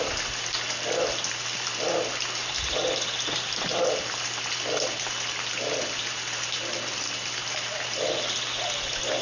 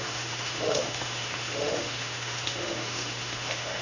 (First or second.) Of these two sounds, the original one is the first